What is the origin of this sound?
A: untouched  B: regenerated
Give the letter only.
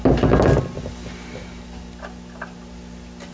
A